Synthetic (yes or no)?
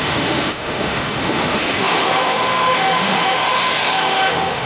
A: yes